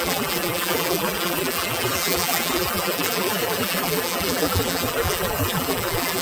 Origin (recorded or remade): remade